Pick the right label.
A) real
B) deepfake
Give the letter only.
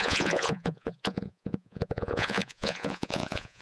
B